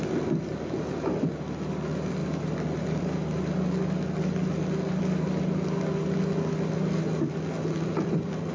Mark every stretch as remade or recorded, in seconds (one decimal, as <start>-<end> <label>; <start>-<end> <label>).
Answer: 0.0-8.5 recorded

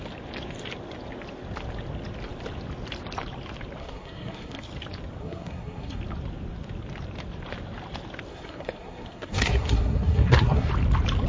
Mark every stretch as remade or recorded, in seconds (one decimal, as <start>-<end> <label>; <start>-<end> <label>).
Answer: 0.0-3.8 recorded; 3.8-4.7 remade; 4.7-5.2 recorded; 5.2-6.0 remade; 6.0-8.3 recorded; 8.3-10.7 remade; 10.7-11.3 recorded

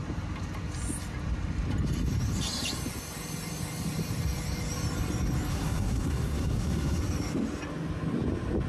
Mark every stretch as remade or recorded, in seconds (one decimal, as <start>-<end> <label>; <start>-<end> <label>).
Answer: 0.0-5.5 recorded; 5.5-7.0 remade; 7.0-8.7 recorded

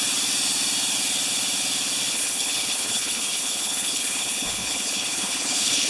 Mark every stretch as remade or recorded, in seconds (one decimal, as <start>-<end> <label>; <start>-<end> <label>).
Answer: 0.0-2.1 recorded; 2.1-5.9 remade

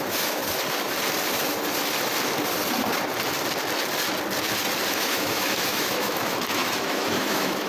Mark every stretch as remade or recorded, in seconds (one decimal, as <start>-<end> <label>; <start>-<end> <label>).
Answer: 0.0-0.4 remade; 0.4-4.9 recorded; 4.9-7.7 remade